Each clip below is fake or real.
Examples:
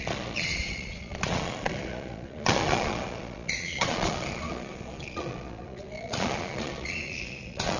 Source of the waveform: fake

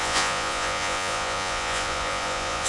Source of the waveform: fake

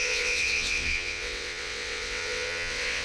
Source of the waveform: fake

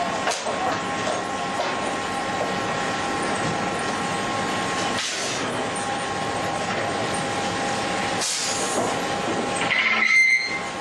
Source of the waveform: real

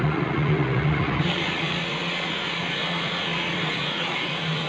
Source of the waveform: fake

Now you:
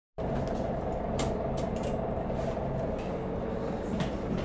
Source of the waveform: real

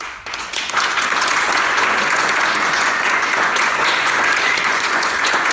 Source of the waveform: fake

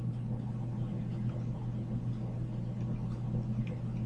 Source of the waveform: real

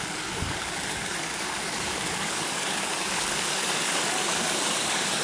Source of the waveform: fake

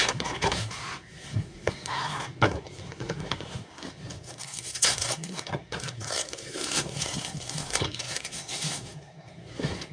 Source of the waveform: fake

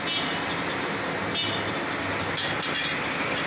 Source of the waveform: real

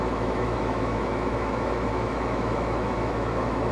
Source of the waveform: fake